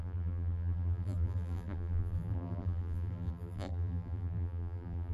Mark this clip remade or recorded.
remade